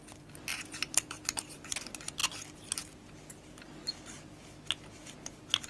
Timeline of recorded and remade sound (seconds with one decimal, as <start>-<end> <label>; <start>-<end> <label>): 0.0-0.5 recorded; 0.5-1.7 remade; 1.7-5.7 recorded